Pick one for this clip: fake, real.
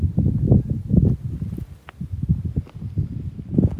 real